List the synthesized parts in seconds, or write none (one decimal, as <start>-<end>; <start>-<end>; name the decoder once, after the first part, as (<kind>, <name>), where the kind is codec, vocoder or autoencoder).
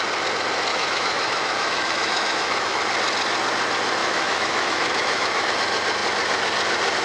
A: 0.7-2.8 (autoencoder, DAC-VAE); 4.0-5.5